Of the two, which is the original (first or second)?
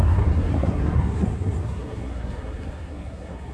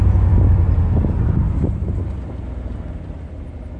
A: second